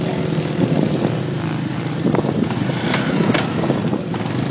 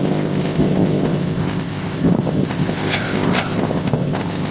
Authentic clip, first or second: first